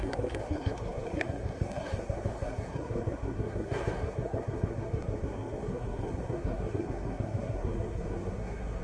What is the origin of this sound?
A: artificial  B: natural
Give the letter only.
A